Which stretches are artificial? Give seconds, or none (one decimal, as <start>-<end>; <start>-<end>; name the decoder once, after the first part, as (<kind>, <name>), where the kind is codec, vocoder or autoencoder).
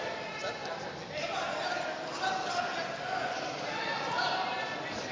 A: none